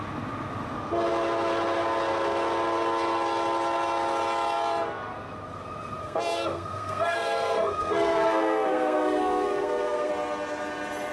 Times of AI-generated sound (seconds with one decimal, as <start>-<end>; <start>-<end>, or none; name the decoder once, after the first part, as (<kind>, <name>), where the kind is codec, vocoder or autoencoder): 6.0-10.1 (codec, SNAC)